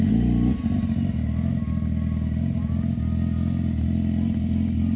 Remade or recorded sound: recorded